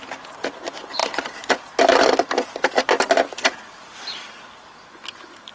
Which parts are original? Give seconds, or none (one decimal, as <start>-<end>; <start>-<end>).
0.0-5.5